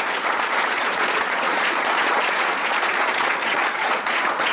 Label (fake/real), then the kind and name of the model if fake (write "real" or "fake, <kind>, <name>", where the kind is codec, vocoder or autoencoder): fake, vocoder, Vocos